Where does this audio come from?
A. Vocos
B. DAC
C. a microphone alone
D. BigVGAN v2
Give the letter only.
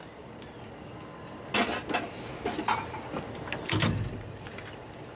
C